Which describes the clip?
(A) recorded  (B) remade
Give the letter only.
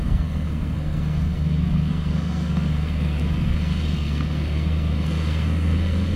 B